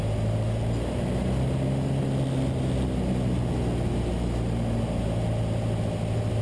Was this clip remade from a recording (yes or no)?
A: no